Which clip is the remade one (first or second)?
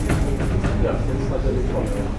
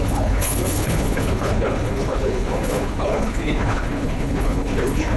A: second